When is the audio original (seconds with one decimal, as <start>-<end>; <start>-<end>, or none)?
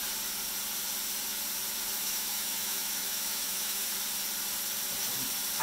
0.0-2.0; 3.9-5.6